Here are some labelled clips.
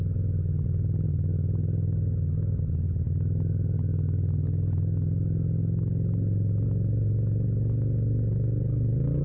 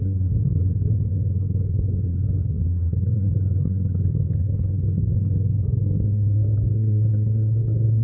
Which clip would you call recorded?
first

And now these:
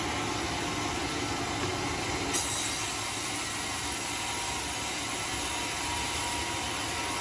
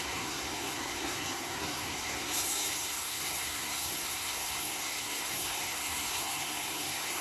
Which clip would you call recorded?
first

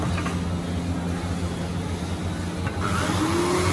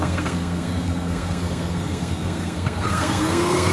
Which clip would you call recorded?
first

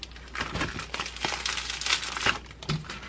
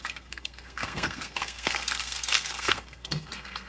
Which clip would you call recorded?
first